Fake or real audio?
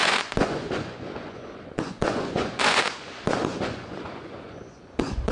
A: fake